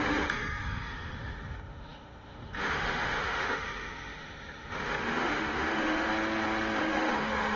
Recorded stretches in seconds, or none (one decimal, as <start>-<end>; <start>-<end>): 6.1-6.8